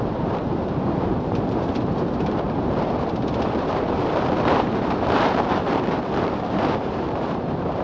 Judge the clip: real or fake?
fake